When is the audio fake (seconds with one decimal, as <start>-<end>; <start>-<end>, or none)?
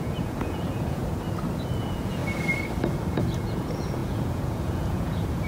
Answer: 0.0-1.0; 1.8-2.2; 3.1-5.5